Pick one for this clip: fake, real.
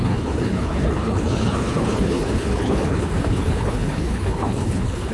fake